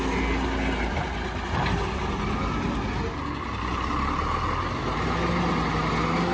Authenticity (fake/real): real